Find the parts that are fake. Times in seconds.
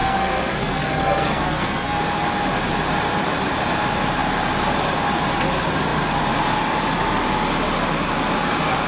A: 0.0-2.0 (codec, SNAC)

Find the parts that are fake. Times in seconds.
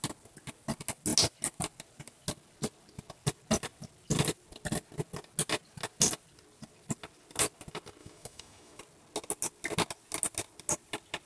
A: 8.0-8.8 (autoencoder, DAC-VAE)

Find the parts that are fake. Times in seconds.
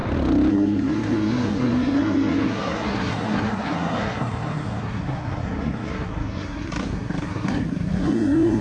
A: 0.5-8.6 (codec, SNAC)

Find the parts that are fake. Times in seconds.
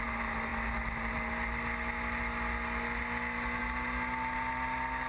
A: none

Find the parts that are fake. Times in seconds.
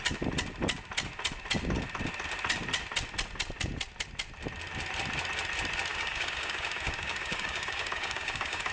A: 5.9-8.7 (codec, DAC)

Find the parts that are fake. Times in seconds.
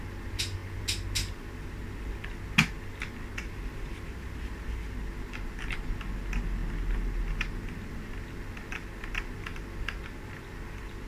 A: none